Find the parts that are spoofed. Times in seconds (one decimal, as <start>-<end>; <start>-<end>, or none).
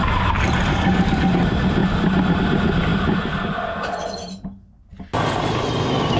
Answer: 0.7-1.3